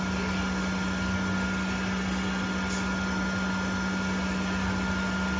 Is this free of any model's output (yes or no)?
yes